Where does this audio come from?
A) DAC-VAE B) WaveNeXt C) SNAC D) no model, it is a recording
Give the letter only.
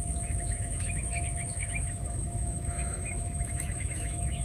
A